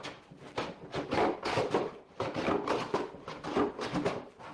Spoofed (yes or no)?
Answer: no